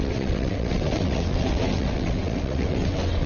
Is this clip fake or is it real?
fake